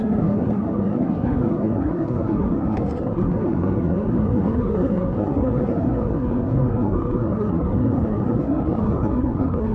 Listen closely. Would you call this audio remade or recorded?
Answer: remade